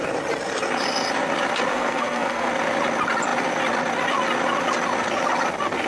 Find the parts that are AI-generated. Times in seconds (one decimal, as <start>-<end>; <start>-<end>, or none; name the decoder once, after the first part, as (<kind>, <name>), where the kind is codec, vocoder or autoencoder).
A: 1.7-2.5 (codec, SNAC)

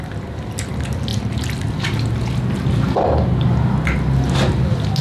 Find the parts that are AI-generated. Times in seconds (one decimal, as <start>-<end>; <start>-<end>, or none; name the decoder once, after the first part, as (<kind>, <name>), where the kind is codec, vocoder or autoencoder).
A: none

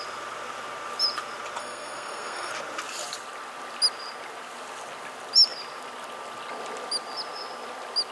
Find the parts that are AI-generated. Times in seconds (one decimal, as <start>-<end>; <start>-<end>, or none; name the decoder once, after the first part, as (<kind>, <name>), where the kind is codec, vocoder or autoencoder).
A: 1.6-2.5 (codec, SNAC)